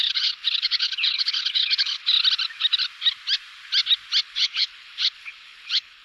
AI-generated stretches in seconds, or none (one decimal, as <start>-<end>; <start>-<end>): 0.0-2.1; 4.2-6.0